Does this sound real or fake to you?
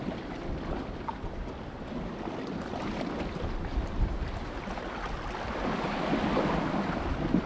real